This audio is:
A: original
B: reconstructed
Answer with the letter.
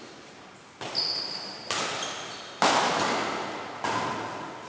A